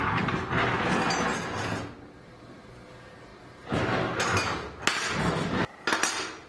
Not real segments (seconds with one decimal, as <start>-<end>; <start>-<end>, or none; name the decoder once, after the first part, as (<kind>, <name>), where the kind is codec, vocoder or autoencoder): none